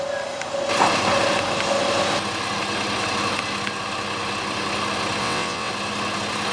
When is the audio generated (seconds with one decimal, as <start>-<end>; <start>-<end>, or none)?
5.2-5.7